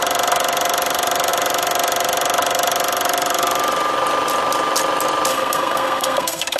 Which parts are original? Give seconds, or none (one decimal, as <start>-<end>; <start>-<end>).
0.0-5.3